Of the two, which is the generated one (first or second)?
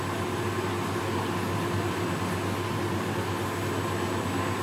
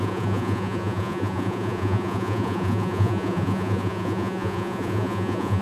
second